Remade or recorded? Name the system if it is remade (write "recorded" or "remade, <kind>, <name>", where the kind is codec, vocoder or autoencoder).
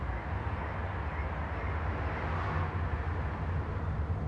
recorded